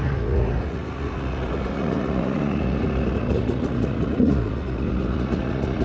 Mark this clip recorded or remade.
remade